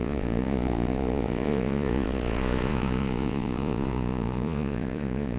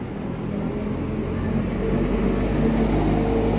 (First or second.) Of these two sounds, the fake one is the first